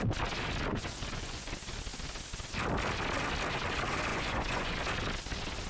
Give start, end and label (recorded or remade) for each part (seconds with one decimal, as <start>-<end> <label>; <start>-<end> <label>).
0.0-0.7 recorded; 0.7-1.5 remade; 1.5-4.1 recorded; 4.1-4.8 remade; 4.8-5.7 recorded